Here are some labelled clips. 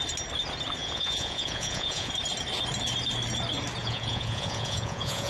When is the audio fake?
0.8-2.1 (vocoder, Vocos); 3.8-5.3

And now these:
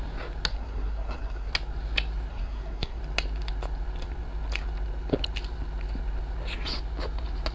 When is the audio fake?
0.5-1.5 (codec, SNAC); 2.3-3.0

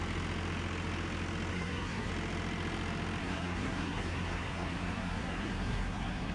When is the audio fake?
1.5-2.1 (codec, SNAC); 3.2-6.3

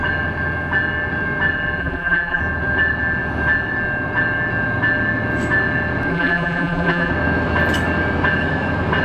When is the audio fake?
1.8-2.4 (vocoder, BigVGAN v2); 6.1-7.1

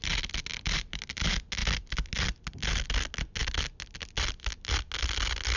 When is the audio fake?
none

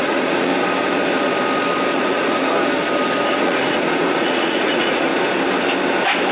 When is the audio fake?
0.0-0.5 (vocoder, Vocos); 1.9-2.5; 3.3-5.1

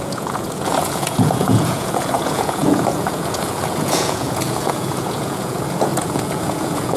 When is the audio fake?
0.0-7.0 (vocoder, Vocos)

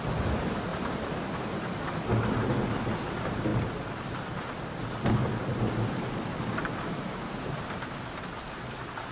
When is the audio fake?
0.7-1.8 (vocoder, BigVGAN v2); 5.2-8.0